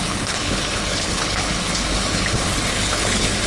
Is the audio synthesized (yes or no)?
yes